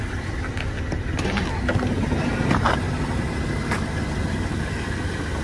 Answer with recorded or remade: recorded